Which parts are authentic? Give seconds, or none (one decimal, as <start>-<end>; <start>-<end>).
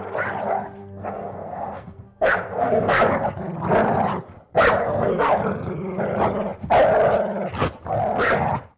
0.0-0.8; 3.0-4.8; 5.3-8.8